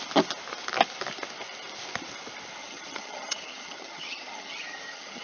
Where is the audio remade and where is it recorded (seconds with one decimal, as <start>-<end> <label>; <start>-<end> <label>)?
0.0-2.6 recorded; 2.6-5.2 remade